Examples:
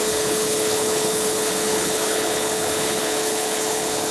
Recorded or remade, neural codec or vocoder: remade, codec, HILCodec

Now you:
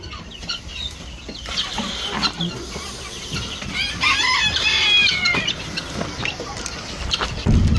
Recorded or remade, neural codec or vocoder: recorded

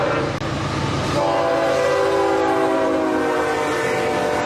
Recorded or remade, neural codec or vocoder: recorded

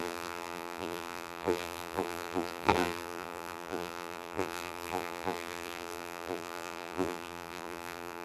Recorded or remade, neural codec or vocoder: remade, vocoder, BigVGAN v2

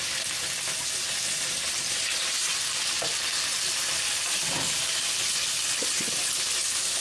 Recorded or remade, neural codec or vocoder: recorded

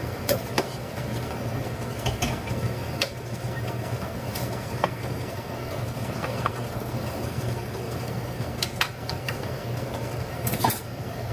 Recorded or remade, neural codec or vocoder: remade, codec, SNAC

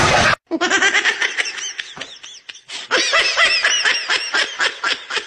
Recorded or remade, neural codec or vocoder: recorded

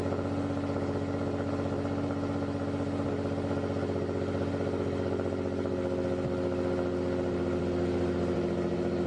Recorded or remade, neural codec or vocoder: recorded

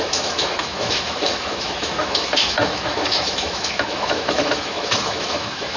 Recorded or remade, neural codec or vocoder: remade, autoencoder, DAC-VAE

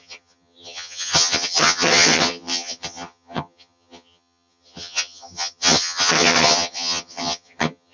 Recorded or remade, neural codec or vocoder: remade, vocoder, HiFi-GAN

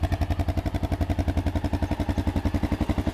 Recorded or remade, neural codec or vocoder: recorded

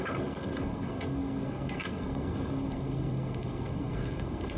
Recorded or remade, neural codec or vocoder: remade, codec, SNAC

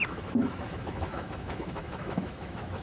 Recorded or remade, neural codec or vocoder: remade, autoencoder, DAC-VAE